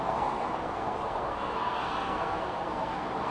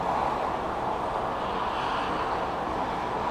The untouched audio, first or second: second